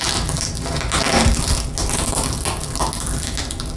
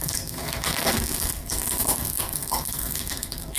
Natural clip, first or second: first